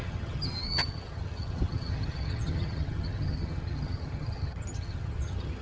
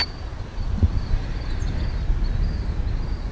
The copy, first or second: first